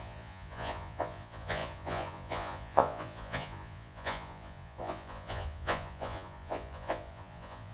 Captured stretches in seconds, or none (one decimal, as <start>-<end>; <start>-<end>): none

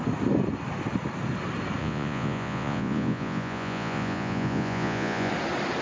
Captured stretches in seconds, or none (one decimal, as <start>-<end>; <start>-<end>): 0.0-1.8; 5.3-5.8

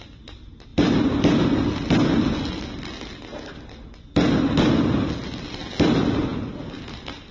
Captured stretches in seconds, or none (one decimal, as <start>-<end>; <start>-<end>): 0.0-7.3

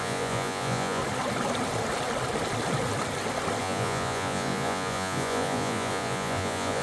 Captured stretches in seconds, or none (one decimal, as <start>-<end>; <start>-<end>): 1.0-3.6